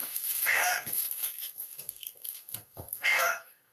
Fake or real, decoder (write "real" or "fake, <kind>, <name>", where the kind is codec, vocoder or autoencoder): fake, codec, DAC